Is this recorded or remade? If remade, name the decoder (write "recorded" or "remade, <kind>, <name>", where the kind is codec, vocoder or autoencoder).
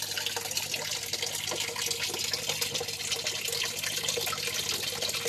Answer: recorded